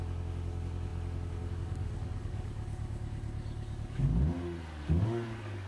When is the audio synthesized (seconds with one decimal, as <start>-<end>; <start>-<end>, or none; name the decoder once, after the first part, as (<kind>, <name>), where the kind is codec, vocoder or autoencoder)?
0.0-4.1 (codec, DAC); 4.9-5.7